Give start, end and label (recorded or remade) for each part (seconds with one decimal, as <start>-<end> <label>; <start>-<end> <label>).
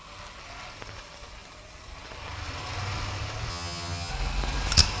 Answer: 0.0-3.5 recorded; 3.5-4.1 remade; 4.1-5.0 recorded